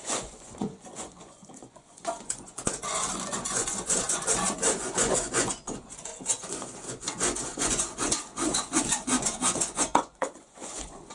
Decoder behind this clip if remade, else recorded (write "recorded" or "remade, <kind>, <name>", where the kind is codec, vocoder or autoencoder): remade, vocoder, Vocos